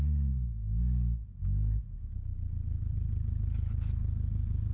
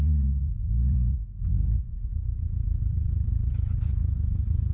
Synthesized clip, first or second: second